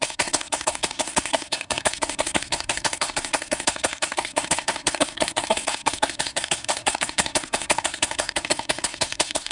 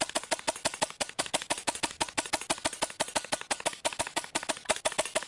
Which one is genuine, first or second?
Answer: second